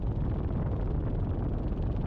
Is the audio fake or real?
real